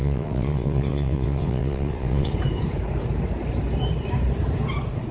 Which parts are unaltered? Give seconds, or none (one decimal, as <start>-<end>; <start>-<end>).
2.3-5.1